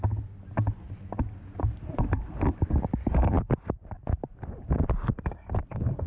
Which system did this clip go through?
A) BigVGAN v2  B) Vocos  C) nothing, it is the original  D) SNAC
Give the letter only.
C